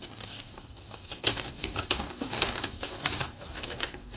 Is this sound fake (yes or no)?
yes